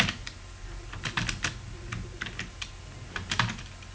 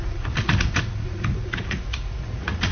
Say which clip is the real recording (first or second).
first